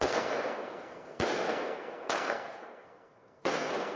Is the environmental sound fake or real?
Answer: fake